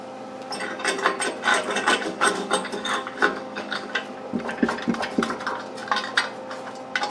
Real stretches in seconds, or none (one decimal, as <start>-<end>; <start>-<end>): 0.0-1.5; 3.9-7.1

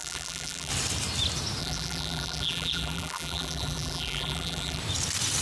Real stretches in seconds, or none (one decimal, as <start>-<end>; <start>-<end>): 0.7-1.6; 4.8-5.4

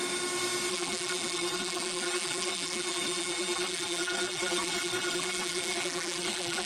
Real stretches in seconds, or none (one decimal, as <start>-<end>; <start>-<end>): 0.0-0.7

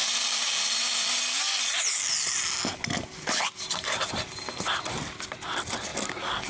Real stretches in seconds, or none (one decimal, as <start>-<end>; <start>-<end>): 0.0-6.5

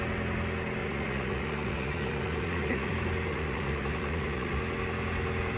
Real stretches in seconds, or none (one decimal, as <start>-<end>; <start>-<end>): 0.0-0.8; 2.9-3.3; 4.6-5.6

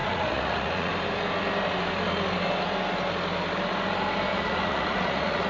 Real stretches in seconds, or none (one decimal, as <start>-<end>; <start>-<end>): 0.9-4.3

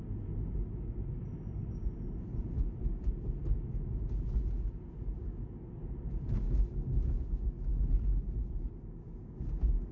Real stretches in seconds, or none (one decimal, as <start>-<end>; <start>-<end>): 0.0-9.9